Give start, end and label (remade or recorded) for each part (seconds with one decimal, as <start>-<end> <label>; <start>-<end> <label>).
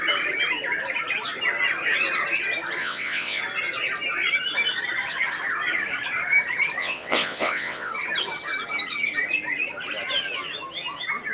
0.0-2.8 recorded; 2.8-3.4 remade; 3.4-6.8 recorded; 6.8-7.9 remade; 7.9-11.3 recorded